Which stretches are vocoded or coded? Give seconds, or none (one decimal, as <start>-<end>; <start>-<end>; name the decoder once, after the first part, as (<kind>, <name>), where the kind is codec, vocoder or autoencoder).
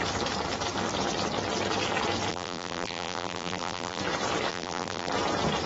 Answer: 2.3-4.0 (vocoder, BigVGAN v2); 4.5-5.1